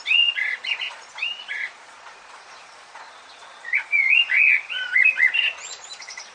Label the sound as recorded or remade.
remade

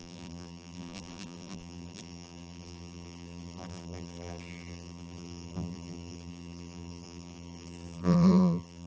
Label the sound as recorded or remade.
remade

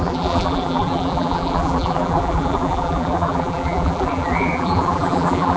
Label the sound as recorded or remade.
remade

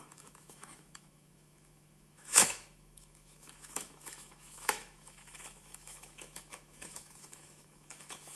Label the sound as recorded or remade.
remade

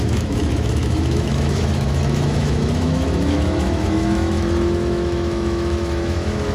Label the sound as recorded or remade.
remade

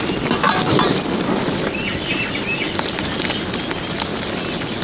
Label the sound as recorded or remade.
recorded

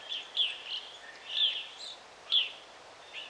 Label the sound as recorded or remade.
recorded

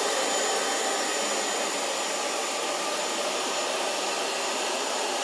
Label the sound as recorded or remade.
recorded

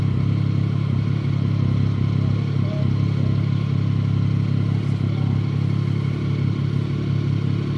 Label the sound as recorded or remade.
recorded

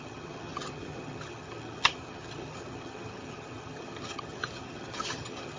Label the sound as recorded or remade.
remade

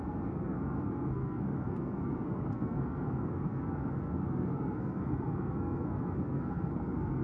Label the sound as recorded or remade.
remade